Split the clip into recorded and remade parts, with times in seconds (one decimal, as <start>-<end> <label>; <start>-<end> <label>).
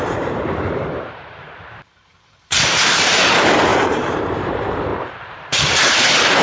0.0-6.4 remade